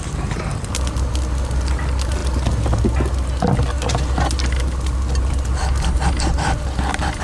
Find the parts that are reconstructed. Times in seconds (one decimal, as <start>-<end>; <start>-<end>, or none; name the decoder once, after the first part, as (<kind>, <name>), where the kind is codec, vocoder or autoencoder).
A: none